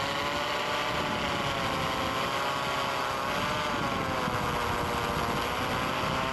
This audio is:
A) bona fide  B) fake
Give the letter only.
A